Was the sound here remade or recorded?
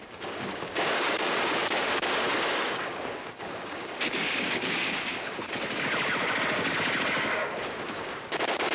remade